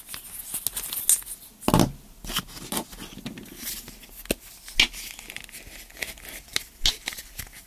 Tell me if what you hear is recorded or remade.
recorded